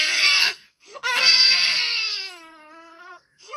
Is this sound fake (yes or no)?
yes